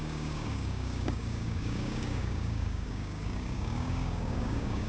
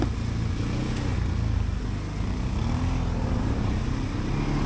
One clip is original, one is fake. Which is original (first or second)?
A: second